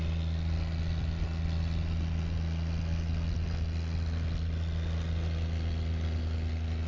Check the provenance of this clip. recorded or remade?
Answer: recorded